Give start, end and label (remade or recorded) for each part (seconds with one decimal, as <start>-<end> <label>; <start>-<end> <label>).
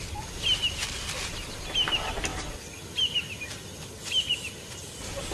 0.0-5.3 recorded